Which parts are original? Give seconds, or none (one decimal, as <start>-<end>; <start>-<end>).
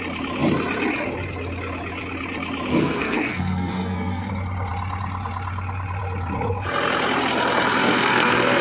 0.0-2.7; 4.3-7.8